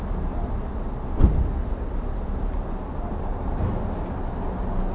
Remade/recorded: recorded